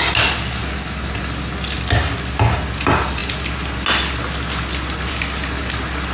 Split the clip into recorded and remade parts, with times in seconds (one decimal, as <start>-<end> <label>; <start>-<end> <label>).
0.0-6.1 recorded